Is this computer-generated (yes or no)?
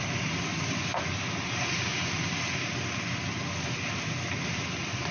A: no